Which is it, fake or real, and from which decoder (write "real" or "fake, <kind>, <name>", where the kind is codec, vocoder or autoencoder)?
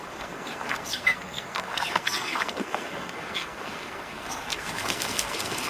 fake, codec, SNAC